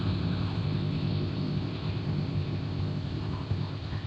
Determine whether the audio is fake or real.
fake